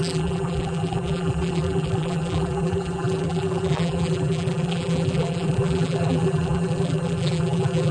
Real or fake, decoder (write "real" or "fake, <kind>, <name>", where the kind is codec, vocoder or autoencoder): fake, vocoder, BigVGAN v2